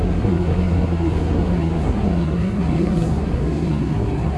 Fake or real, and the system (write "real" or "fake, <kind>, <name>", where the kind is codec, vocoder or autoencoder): fake, codec, SNAC